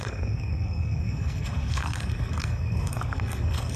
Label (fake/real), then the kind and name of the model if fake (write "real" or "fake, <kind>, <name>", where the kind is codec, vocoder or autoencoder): fake, codec, SNAC